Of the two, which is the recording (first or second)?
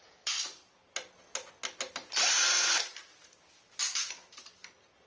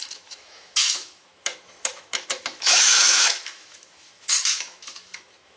first